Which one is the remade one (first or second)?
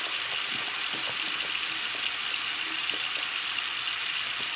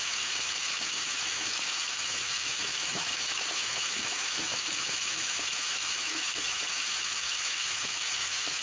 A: second